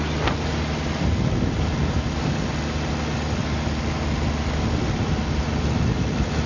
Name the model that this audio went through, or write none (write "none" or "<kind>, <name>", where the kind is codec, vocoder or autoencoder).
none